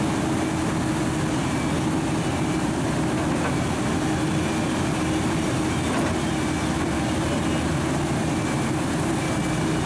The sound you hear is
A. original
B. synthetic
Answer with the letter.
A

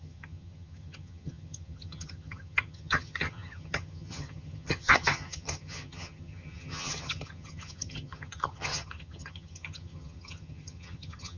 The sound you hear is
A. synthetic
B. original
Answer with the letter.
A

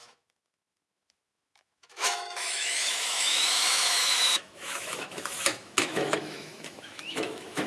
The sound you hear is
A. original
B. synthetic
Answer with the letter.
B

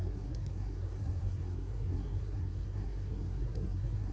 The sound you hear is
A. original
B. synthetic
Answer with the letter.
B